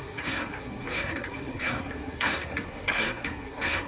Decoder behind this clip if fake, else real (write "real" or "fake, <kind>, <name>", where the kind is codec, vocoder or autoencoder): fake, codec, SNAC